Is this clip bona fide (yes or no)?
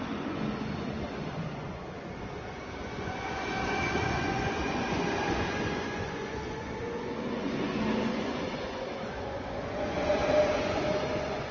no